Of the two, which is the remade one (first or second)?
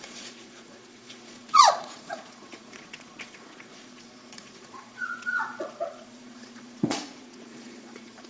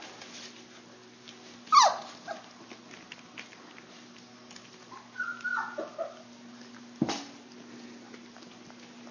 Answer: first